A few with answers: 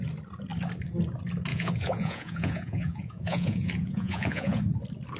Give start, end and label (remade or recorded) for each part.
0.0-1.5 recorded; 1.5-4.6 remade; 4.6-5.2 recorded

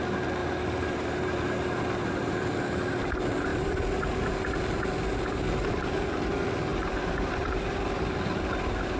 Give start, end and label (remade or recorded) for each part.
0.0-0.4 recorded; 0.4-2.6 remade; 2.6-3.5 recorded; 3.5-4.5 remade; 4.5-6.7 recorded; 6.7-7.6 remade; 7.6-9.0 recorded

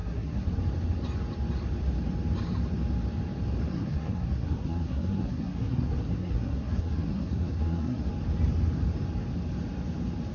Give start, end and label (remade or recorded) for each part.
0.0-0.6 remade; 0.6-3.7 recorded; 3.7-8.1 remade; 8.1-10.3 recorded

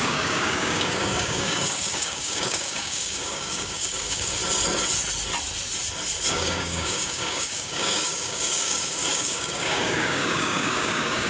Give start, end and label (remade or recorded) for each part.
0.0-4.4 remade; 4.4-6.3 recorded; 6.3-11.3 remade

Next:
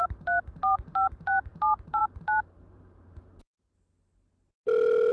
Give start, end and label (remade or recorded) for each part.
0.0-3.9 remade; 3.9-5.1 recorded

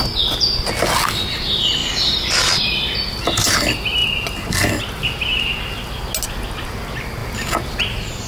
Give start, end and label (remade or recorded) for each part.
0.0-1.8 recorded; 1.8-2.5 remade; 2.5-8.3 recorded

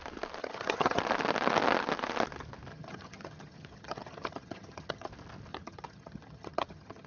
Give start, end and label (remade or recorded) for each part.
0.0-0.4 recorded; 0.4-1.0 remade; 1.0-2.7 recorded; 2.7-5.1 remade; 5.1-5.5 recorded; 5.5-7.1 remade